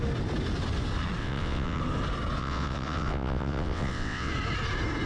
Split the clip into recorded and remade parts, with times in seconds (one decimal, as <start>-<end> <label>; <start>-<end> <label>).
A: 0.0-1.2 recorded; 1.2-1.8 remade; 1.8-2.4 recorded; 2.4-4.3 remade; 4.3-5.1 recorded